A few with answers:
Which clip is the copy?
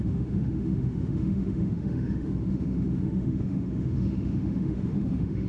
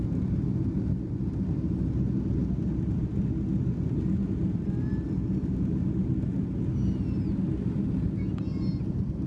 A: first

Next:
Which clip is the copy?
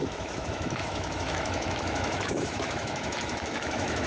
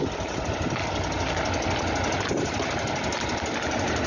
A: first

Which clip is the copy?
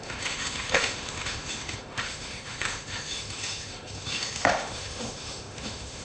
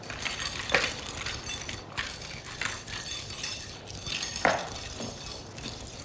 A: first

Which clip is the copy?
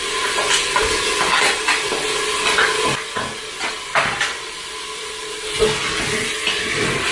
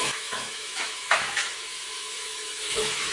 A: second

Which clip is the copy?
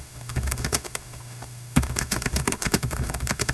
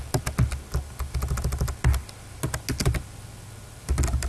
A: first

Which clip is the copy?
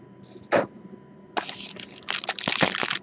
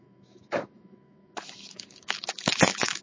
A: second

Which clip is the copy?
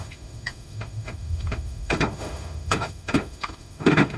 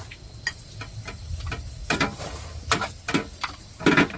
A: first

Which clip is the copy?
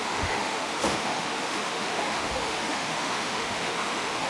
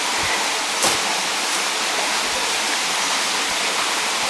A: first